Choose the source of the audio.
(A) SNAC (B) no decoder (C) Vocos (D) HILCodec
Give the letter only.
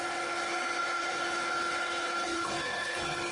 D